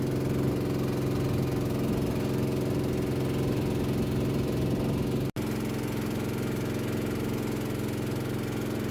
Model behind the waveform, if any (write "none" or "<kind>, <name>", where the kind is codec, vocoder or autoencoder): none